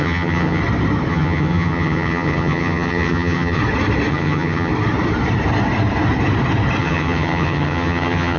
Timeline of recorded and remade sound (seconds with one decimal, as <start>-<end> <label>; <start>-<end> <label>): 0.0-0.6 remade; 0.6-1.1 recorded; 1.1-3.6 remade; 3.6-4.1 recorded; 4.1-4.7 remade; 4.7-6.8 recorded; 6.8-8.4 remade